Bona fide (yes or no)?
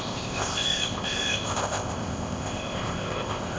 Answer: no